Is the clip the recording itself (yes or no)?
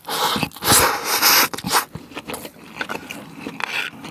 yes